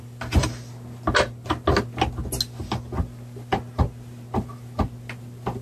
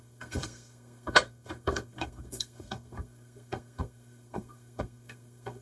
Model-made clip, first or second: second